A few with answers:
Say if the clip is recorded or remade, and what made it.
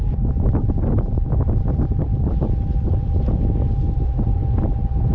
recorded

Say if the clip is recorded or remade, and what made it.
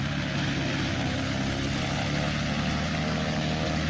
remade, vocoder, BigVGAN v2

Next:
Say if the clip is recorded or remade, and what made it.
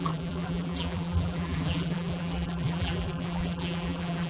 remade, vocoder, BigVGAN v2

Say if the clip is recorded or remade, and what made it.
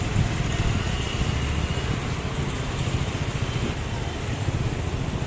recorded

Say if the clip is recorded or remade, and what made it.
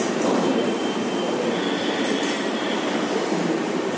remade, vocoder, BigVGAN v2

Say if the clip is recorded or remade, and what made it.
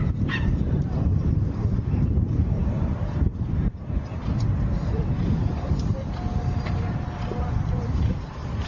remade, vocoder, BigVGAN v2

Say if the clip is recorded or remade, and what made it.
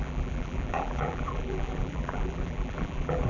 remade, vocoder, BigVGAN v2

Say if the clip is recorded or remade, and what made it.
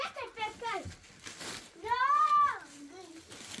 remade, vocoder, BigVGAN v2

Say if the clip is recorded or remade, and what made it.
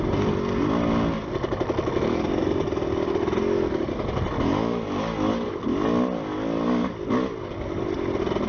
recorded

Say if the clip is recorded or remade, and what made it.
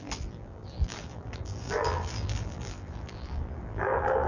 remade, vocoder, BigVGAN v2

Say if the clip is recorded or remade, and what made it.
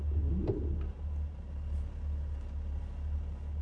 recorded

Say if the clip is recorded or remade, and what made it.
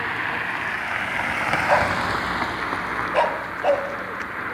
recorded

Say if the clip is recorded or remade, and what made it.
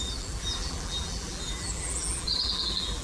remade, vocoder, BigVGAN v2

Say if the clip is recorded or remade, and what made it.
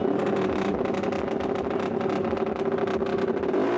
recorded